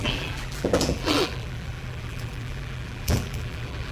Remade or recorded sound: remade